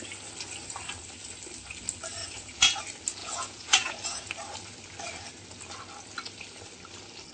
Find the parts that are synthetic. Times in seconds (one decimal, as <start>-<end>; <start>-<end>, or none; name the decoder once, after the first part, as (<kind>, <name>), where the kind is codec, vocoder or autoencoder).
2.2-2.8 (vocoder, Vocos); 3.2-4.3